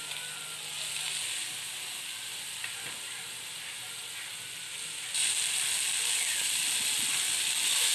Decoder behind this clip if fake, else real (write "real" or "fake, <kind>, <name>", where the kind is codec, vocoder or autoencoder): real